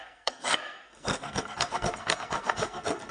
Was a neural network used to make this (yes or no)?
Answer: yes